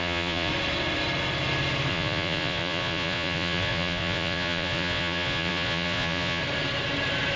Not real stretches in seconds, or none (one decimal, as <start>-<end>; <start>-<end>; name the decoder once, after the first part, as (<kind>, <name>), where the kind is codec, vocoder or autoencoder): 0.0-0.5 (vocoder, Vocos); 1.9-6.4